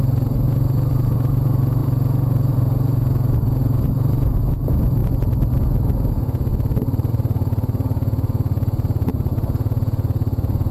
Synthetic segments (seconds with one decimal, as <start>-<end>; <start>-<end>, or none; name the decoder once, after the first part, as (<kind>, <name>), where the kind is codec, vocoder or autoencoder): 0.0-5.0 (vocoder, Vocos); 6.1-6.5; 7.1-10.7